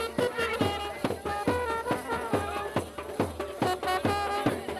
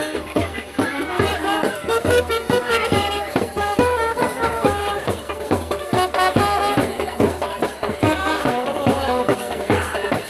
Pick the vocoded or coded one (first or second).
second